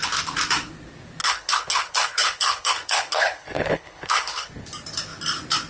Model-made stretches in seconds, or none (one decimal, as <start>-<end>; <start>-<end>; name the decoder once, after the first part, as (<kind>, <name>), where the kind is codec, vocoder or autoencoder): 1.2-4.5 (codec, HILCodec)